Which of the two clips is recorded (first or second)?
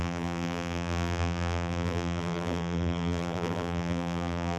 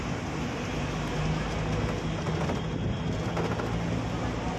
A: second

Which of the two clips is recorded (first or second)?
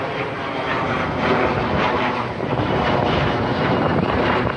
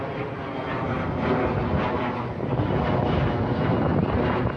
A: second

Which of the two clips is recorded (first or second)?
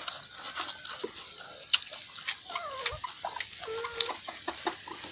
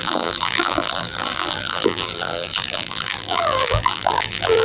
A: first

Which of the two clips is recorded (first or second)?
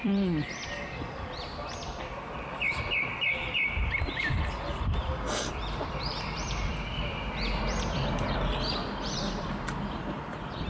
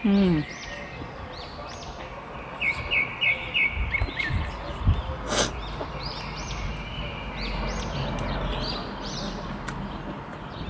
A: second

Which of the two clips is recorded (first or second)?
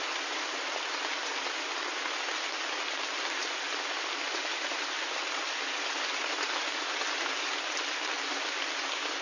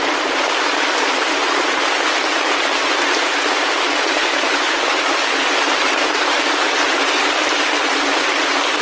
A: first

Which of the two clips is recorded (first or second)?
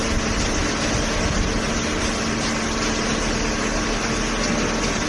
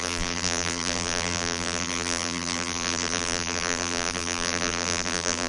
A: first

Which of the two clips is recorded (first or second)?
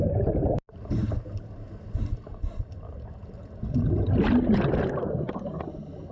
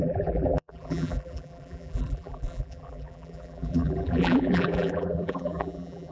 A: first